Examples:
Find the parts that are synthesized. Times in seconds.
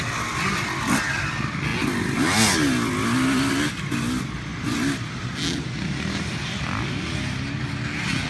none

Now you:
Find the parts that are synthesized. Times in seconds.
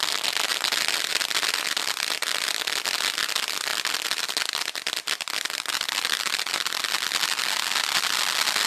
0.5-1.1; 3.7-6.8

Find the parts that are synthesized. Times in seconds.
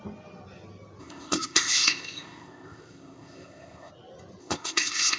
1.0-3.9; 4.4-5.2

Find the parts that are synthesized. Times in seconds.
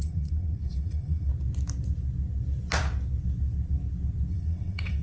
0.0-1.3; 4.3-5.0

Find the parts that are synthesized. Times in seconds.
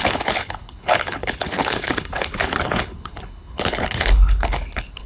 0.0-5.1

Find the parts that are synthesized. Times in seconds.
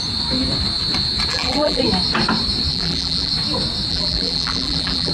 1.3-1.8; 2.7-3.3; 3.9-5.1